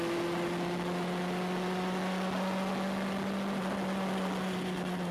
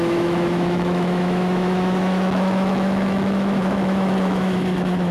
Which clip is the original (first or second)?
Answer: first